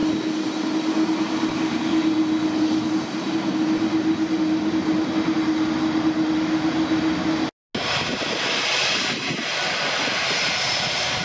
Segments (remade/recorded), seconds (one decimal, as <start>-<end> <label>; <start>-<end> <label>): 0.0-11.2 recorded